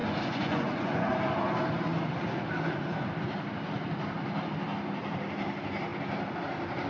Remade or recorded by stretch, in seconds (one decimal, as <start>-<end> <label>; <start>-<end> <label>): 0.0-1.1 remade; 1.1-6.9 recorded